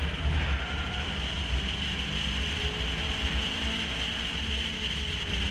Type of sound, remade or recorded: recorded